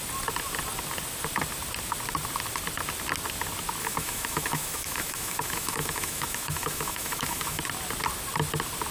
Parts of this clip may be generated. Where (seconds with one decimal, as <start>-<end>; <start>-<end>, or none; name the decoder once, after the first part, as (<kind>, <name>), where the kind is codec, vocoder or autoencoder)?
3.8-7.6 (autoencoder, DAC-VAE)